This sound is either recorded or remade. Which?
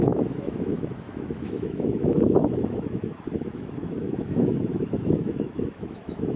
remade